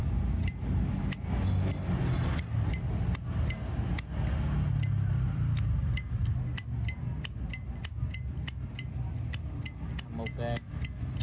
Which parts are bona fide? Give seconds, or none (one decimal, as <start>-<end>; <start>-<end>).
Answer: 0.0-11.2